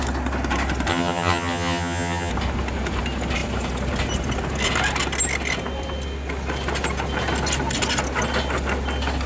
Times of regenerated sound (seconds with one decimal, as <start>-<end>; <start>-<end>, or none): 0.9-2.3